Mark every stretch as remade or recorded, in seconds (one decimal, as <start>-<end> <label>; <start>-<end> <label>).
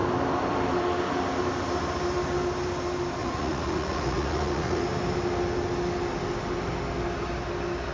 0.0-3.2 recorded; 3.2-4.8 remade; 4.8-7.9 recorded